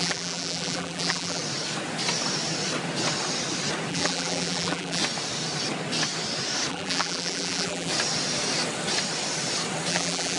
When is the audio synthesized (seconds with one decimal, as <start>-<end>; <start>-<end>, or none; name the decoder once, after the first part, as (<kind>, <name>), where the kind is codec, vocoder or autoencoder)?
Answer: 0.0-1.4 (vocoder, BigVGAN v2); 3.9-5.0; 6.7-7.9; 9.9-10.4